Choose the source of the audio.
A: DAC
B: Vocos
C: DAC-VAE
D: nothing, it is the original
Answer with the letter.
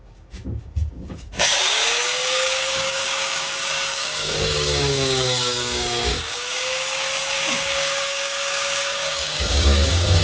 A